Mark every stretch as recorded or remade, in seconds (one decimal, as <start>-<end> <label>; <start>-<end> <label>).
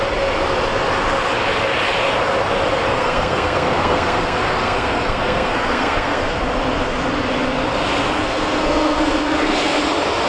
0.0-2.9 recorded; 2.9-6.4 remade; 6.4-8.2 recorded; 8.2-9.8 remade; 9.8-10.3 recorded